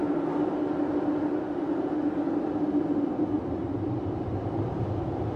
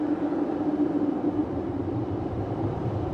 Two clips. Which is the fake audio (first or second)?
second